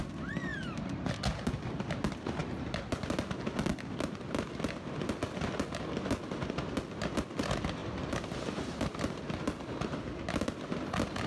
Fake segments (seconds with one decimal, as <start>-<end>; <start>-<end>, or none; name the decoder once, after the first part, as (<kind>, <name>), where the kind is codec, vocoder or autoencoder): 0.5-1.1 (vocoder, BigVGAN v2); 7.8-9.2